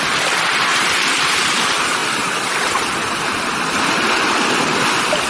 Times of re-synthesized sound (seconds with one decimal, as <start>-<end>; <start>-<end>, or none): 0.7-1.5